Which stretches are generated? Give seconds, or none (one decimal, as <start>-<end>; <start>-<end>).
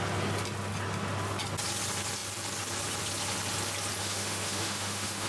4.0-5.3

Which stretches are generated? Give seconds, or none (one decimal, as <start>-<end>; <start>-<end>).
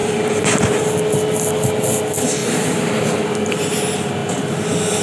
0.0-0.9; 2.4-2.9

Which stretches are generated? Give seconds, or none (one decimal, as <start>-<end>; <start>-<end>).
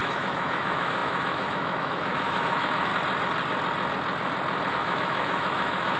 0.0-2.9; 4.7-6.0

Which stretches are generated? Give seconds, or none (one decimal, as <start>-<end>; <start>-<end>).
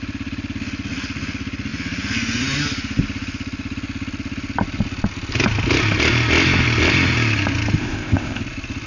7.8-8.4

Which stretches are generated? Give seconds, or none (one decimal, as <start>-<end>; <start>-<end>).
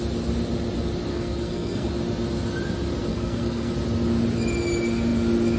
1.1-1.9; 3.1-3.7